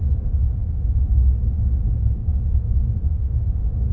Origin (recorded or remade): remade